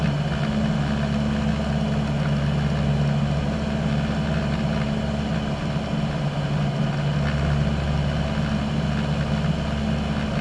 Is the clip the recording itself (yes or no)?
yes